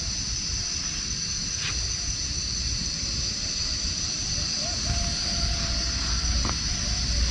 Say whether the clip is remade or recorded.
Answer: recorded